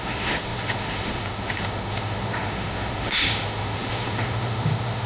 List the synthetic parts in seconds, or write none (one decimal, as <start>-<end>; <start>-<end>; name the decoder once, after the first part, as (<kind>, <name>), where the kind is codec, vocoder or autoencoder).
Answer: 0.0-5.1 (autoencoder, DAC-VAE)

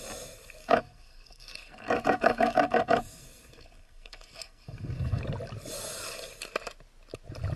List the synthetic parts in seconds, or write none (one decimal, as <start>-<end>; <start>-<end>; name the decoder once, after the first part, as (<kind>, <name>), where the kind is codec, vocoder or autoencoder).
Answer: 0.6-5.2 (codec, SNAC)

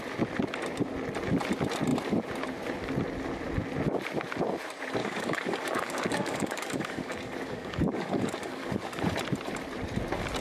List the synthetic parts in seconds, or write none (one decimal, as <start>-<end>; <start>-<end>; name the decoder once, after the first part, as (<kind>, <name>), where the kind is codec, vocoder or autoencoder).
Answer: 5.0-9.0 (codec, DAC)

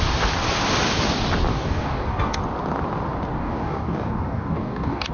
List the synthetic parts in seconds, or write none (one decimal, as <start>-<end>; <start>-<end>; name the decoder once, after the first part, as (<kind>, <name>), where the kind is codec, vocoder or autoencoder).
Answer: 1.5-2.4 (codec, DAC); 3.4-5.1